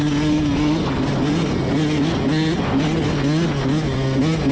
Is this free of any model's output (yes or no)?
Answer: yes